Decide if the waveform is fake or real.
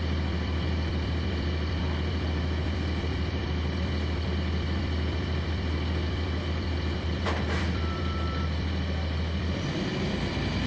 fake